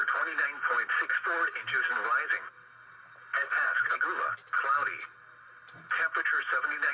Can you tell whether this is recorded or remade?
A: recorded